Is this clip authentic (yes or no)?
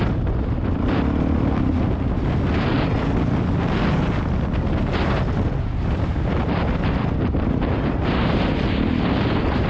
yes